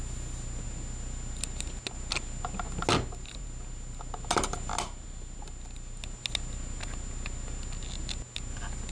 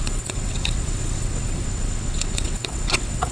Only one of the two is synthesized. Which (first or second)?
second